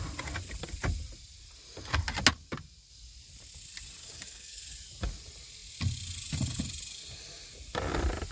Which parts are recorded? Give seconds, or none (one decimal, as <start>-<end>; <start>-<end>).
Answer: 0.0-4.0; 4.6-8.3